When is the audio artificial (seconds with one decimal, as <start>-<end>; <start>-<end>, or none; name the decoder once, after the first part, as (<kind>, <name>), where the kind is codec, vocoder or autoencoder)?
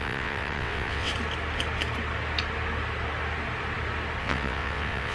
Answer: 0.0-1.1 (vocoder, WaveNeXt); 4.2-5.1